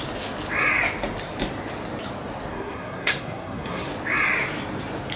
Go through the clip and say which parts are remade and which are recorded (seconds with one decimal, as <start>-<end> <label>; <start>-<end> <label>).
0.0-2.5 recorded; 2.5-3.9 remade; 3.9-5.2 recorded